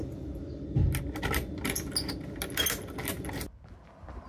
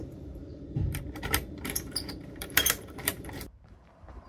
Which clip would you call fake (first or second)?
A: second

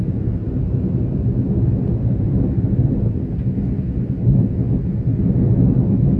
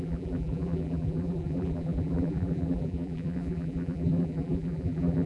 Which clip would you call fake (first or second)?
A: second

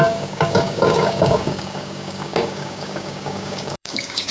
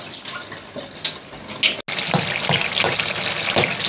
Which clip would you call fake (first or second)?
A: first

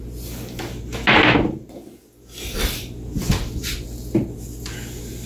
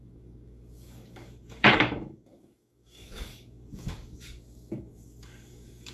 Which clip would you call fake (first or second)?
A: second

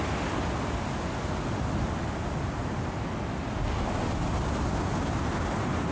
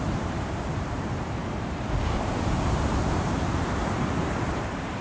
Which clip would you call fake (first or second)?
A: second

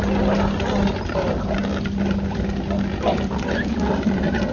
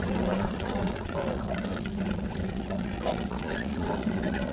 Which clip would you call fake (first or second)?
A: second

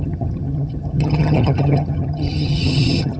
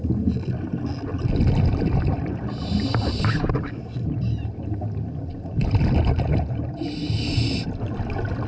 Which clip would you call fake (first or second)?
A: first